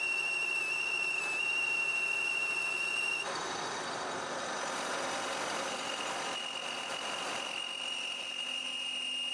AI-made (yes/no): no